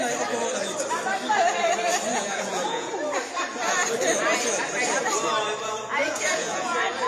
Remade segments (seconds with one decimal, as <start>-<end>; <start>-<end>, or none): 2.1-2.9; 6.0-7.1